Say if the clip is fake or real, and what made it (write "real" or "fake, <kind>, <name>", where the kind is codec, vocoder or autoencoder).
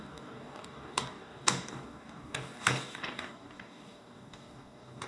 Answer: fake, codec, DAC